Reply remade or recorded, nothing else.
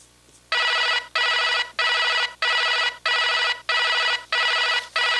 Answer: recorded